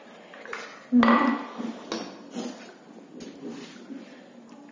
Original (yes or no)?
yes